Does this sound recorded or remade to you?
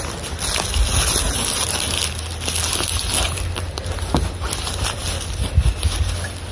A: recorded